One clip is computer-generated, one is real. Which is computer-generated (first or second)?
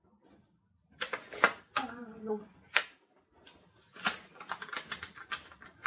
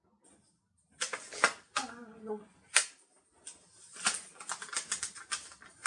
first